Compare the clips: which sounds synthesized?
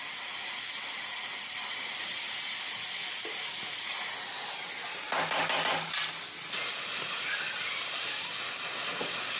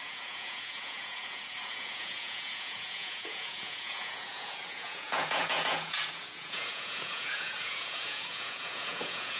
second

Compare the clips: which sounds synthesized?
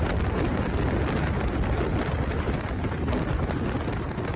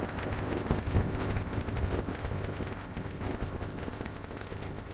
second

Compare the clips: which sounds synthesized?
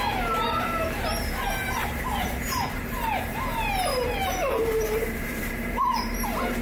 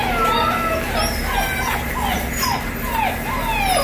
first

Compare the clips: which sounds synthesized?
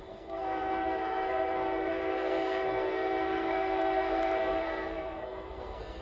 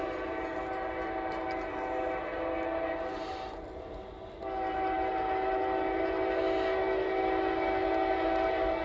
first